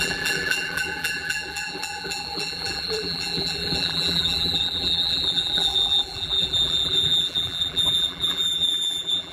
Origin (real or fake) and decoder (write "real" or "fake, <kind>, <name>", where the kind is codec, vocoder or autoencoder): fake, vocoder, BigVGAN v2